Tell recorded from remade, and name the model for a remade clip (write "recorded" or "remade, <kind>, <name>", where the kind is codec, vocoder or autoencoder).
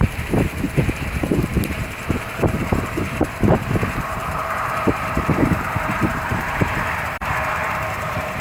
remade, vocoder, BigVGAN v2